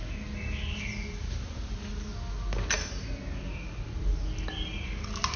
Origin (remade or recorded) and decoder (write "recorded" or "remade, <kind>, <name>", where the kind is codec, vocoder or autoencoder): recorded